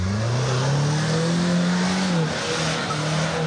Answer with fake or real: real